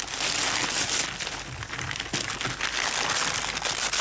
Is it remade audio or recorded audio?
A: recorded